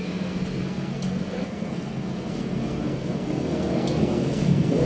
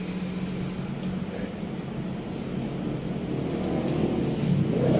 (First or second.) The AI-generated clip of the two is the first